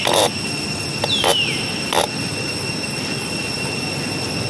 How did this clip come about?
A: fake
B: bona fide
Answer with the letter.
B